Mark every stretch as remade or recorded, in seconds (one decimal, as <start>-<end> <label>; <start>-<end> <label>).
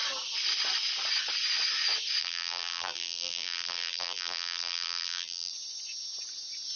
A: 0.0-2.2 recorded; 2.2-5.5 remade; 5.5-6.8 recorded